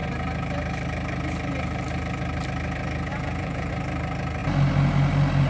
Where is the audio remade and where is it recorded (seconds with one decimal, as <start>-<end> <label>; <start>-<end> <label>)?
0.0-3.1 recorded; 3.1-3.7 remade; 3.7-5.5 recorded